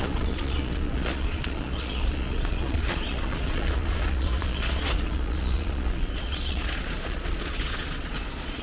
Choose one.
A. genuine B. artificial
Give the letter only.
B